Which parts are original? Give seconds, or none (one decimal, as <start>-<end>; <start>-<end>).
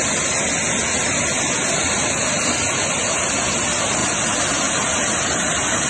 0.0-5.9